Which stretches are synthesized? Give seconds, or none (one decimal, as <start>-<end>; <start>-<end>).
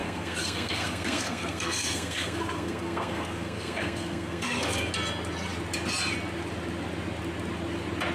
0.0-4.9